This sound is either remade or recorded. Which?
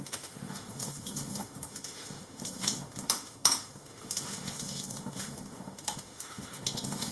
remade